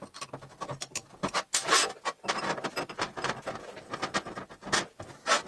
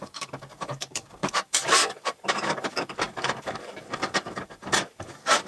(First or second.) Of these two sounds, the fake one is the second